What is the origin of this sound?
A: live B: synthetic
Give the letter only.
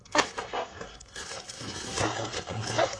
B